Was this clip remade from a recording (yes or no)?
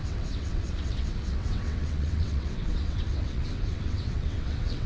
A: yes